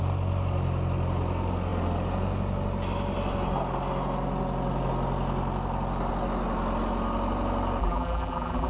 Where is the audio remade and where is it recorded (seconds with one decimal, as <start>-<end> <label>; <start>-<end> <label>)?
0.0-7.8 recorded; 7.8-8.7 remade

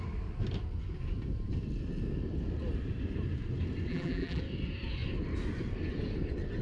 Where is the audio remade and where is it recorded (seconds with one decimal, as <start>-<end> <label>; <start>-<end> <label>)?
0.0-3.9 recorded; 3.9-4.4 remade; 4.4-6.6 recorded

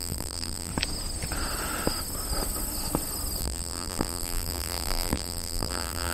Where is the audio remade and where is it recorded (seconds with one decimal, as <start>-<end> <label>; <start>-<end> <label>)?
0.0-0.7 remade; 0.7-3.4 recorded; 3.4-6.1 remade

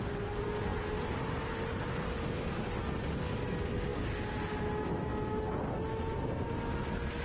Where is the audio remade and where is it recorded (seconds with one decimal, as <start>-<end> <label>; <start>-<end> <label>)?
0.0-7.2 recorded

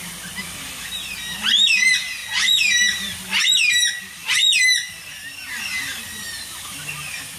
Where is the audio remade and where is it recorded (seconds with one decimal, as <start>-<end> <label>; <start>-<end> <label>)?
0.0-7.4 recorded

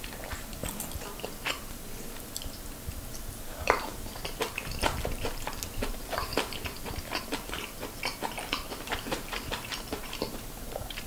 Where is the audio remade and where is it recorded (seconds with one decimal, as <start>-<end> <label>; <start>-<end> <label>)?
0.0-0.6 remade; 0.6-2.9 recorded; 2.9-6.3 remade; 6.3-7.2 recorded; 7.2-11.1 remade

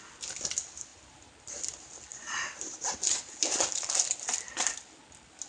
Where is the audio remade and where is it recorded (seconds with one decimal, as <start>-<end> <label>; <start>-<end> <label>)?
0.0-0.9 recorded; 0.9-1.7 remade; 1.7-2.1 recorded; 2.1-4.8 remade; 4.8-5.5 recorded